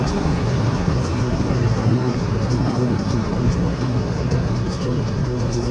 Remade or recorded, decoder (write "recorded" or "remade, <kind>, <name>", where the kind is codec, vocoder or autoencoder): remade, codec, SNAC